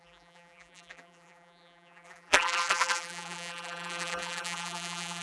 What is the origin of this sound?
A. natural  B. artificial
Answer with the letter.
B